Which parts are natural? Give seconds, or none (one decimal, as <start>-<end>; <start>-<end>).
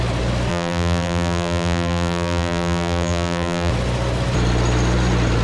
0.0-0.5; 3.7-5.4